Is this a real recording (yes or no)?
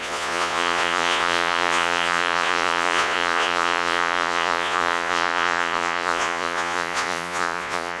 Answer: no